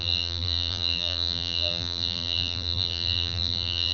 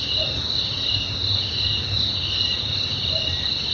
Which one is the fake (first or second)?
first